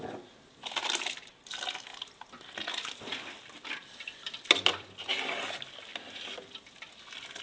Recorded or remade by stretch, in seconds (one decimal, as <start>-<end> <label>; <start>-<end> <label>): 0.0-1.9 recorded; 1.9-5.1 remade; 5.1-5.9 recorded; 5.9-7.4 remade